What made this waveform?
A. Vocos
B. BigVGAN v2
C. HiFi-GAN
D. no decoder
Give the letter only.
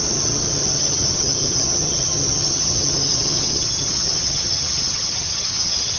C